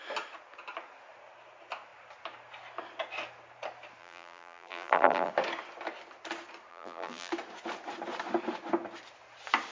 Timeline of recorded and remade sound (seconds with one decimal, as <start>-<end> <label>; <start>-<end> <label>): 0.0-4.0 recorded; 4.0-5.3 remade; 5.3-6.7 recorded; 6.7-7.3 remade; 7.3-9.7 recorded

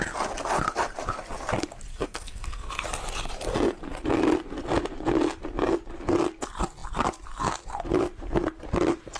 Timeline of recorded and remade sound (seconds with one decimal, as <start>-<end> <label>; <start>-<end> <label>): 0.0-1.9 recorded; 1.9-2.7 remade; 2.7-9.2 recorded

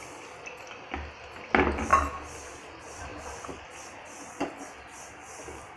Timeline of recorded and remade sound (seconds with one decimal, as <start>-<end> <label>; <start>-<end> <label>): 0.0-5.8 recorded

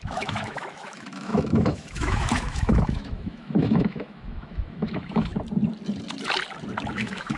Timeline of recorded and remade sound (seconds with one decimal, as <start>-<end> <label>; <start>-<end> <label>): 0.0-5.3 remade; 5.3-6.9 recorded; 6.9-7.4 remade

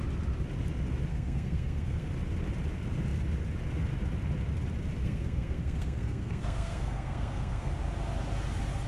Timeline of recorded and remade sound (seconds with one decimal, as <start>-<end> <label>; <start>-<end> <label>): 0.0-1.1 recorded; 1.1-2.1 remade; 2.1-5.0 recorded; 5.0-7.7 remade; 7.7-8.9 recorded

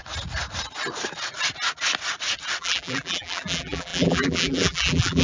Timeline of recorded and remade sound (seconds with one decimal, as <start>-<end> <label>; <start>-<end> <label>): 0.0-2.6 recorded; 2.6-5.2 remade

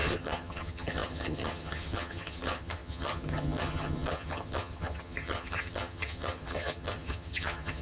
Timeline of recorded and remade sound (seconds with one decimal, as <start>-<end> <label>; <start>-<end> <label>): 0.0-7.8 remade

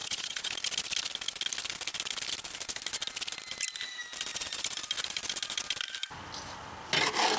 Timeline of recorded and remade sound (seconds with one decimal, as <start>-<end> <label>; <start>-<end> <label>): 0.0-0.5 remade; 0.5-7.4 recorded